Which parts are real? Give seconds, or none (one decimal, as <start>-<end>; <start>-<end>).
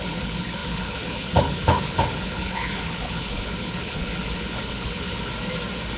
5.3-6.0